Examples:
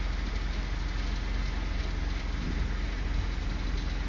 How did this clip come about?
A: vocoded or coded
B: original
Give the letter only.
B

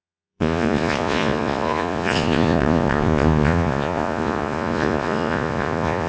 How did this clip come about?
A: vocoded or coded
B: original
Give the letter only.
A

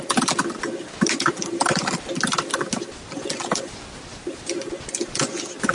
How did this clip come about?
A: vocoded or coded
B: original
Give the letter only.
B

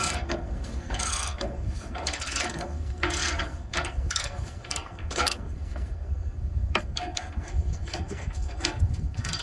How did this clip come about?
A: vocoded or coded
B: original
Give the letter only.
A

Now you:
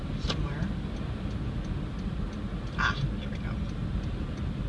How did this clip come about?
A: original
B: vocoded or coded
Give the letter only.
A